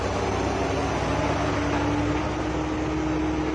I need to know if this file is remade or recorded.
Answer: recorded